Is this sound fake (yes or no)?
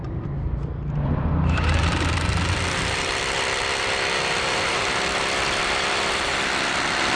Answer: yes